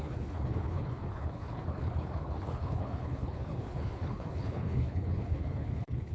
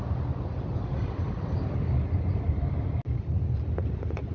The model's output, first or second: first